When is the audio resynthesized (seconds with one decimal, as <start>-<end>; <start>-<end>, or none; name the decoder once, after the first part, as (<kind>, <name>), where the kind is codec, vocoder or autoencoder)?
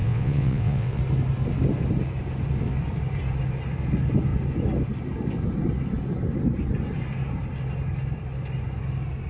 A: 0.0-1.0 (vocoder, WaveNeXt)